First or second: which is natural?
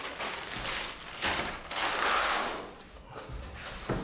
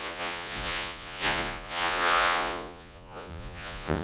first